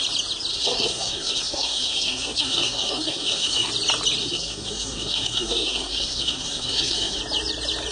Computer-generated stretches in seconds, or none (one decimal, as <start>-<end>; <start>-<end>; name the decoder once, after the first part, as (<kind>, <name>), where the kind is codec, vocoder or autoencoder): 0.5-3.7 (codec, SNAC); 4.2-7.2